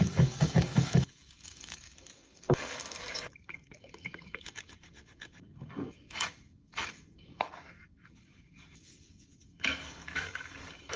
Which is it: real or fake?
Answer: fake